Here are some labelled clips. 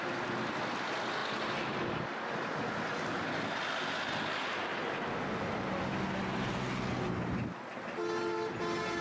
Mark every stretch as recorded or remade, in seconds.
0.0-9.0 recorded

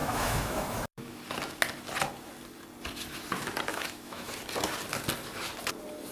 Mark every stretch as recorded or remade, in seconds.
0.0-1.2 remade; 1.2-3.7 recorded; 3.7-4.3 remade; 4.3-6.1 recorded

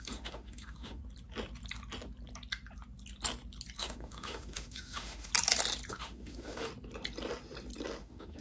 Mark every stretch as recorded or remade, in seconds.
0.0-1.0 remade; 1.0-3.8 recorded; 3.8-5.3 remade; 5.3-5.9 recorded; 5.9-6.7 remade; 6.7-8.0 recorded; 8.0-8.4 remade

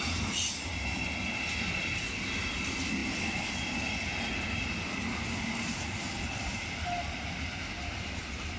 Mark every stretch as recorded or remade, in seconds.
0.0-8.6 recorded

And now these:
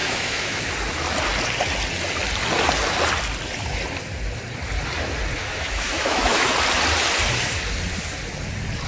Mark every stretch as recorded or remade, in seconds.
0.0-0.6 remade; 0.6-5.4 recorded; 5.4-6.5 remade; 6.5-8.9 recorded

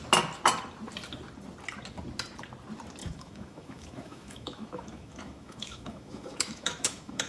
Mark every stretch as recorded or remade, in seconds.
0.0-3.0 recorded; 3.0-7.3 remade

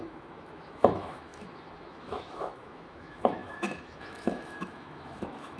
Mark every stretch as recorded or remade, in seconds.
0.0-5.6 remade